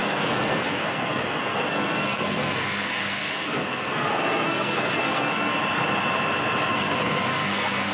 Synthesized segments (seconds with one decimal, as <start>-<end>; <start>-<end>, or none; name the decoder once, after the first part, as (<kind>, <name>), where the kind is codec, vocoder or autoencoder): 0.0-5.5 (codec, SNAC); 6.7-7.9